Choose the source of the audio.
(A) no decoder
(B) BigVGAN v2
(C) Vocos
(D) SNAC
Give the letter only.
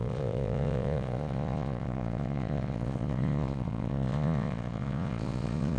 C